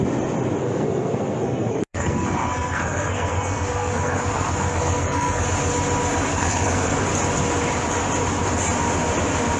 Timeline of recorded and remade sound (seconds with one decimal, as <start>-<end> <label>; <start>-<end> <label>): 0.0-0.6 recorded; 0.6-5.4 remade; 5.4-6.3 recorded; 6.3-7.1 remade; 7.1-9.6 recorded